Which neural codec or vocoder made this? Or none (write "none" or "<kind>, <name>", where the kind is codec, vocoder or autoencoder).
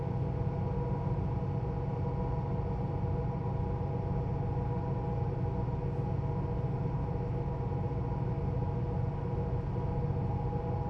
none